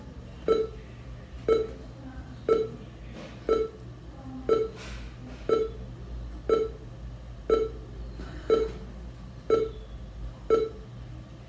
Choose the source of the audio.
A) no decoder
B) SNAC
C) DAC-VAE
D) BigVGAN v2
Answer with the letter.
A